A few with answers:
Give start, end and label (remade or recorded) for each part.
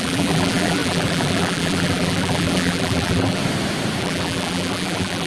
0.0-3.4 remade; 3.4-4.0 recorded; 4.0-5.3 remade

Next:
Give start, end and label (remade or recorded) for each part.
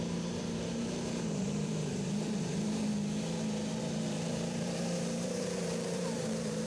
0.0-2.9 remade; 2.9-3.8 recorded; 3.8-6.7 remade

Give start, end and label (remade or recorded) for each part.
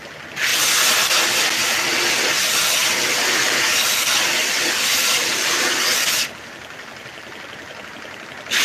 0.0-8.6 recorded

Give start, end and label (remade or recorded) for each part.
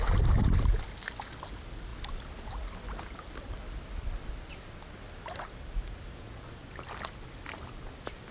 0.0-1.9 recorded; 1.9-4.3 remade; 4.3-8.3 recorded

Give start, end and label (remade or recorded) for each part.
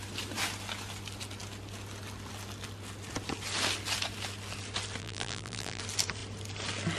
0.0-5.0 recorded; 5.0-5.8 remade; 5.8-7.0 recorded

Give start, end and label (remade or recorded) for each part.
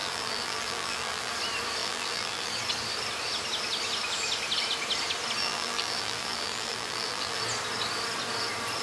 0.0-1.3 remade; 1.3-1.8 recorded; 1.8-2.5 remade; 2.5-5.4 recorded; 5.4-7.4 remade; 7.4-8.8 recorded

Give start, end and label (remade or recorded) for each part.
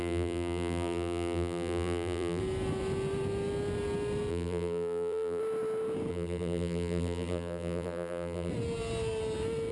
0.0-2.4 remade; 2.4-4.3 recorded; 4.3-5.4 remade; 5.4-6.1 recorded; 6.1-8.5 remade; 8.5-9.7 recorded